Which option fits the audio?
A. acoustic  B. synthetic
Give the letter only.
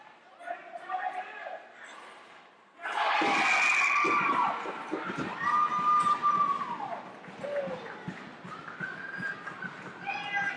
A